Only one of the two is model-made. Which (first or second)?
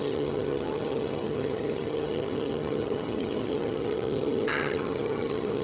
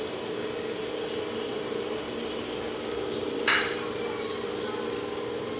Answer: first